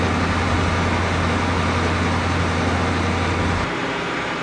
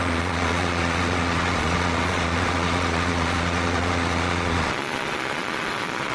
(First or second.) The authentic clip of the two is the first